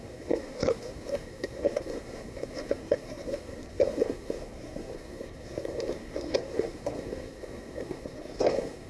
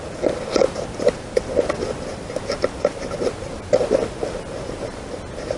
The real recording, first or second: second